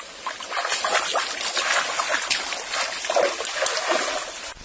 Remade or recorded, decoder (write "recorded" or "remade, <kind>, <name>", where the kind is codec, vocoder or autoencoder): recorded